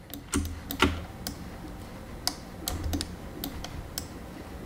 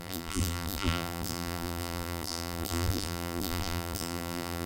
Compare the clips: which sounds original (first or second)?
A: first